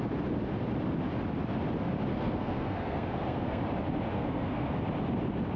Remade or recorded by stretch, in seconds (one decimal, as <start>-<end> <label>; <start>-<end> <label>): 0.0-2.1 recorded; 2.1-3.6 remade; 3.6-4.1 recorded; 4.1-4.8 remade; 4.8-5.6 recorded